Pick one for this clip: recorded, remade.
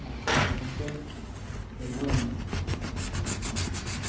recorded